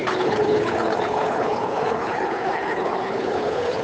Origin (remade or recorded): remade